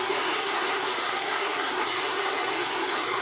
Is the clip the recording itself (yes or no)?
no